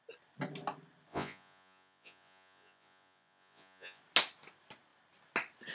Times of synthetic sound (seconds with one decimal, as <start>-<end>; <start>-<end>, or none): 1.1-4.0